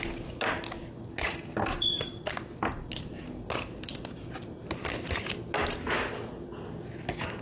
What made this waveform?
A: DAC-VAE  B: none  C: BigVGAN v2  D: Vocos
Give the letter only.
B